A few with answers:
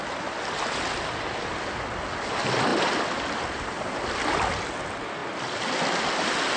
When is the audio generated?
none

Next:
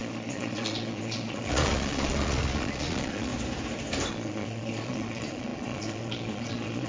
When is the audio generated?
0.0-3.3 (vocoder, Vocos); 4.1-6.9

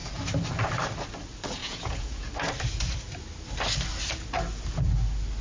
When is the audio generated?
1.6-2.3 (vocoder, Vocos)

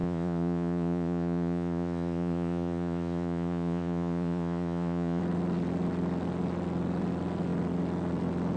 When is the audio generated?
0.0-5.2 (vocoder, Vocos)

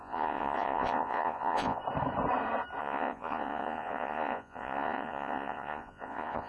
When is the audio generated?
0.0-1.8 (vocoder, Vocos); 2.8-6.5

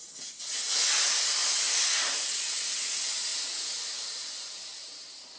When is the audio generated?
3.3-4.2 (vocoder, Vocos)